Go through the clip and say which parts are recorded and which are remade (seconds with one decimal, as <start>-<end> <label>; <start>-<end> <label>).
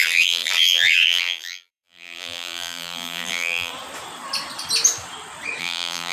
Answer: 0.0-3.7 remade; 3.7-5.6 recorded; 5.6-6.1 remade